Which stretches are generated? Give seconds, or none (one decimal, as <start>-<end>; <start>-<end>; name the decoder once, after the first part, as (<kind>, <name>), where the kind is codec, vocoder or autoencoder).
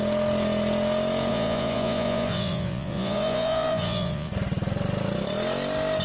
1.3-4.3 (vocoder, Vocos)